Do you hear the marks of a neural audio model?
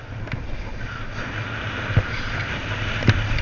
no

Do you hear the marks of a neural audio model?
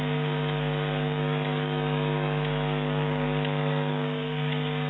yes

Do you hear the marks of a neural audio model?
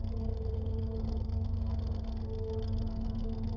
yes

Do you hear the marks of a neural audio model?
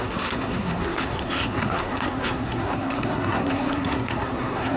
yes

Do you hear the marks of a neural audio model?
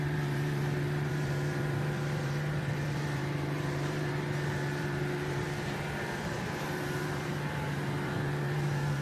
yes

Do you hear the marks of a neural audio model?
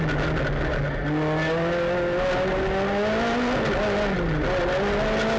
no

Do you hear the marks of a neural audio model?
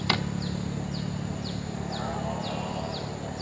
no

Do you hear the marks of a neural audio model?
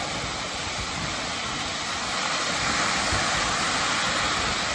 no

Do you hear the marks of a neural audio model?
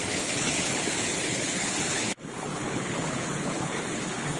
yes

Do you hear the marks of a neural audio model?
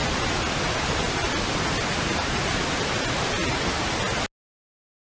no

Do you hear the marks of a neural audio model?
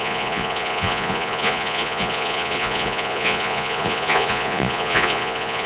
yes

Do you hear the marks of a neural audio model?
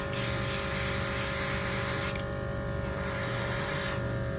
no